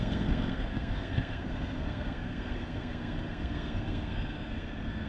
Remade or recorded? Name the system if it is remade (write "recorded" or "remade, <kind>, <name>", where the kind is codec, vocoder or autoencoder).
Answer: remade, codec, SNAC